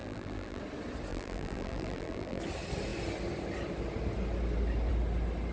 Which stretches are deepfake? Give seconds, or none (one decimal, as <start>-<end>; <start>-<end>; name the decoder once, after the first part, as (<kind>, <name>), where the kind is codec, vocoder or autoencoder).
0.0-0.6 (vocoder, BigVGAN v2); 1.1-2.4